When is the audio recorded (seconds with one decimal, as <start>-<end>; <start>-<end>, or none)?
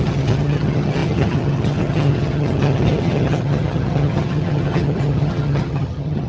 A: none